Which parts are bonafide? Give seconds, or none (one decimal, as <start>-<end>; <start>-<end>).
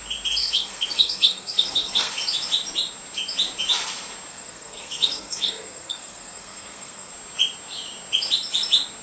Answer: 0.0-0.4; 2.1-4.3; 7.1-9.0